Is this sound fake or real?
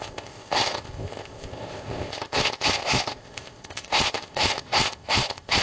fake